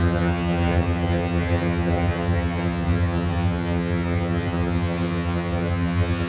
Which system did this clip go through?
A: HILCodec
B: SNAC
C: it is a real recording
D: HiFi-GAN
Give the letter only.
D